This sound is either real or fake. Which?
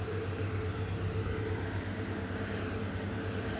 fake